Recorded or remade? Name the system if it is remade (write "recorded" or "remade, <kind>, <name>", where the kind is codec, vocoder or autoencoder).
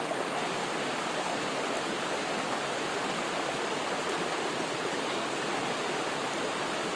recorded